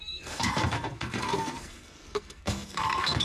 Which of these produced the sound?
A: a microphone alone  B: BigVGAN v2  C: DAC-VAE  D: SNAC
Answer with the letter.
D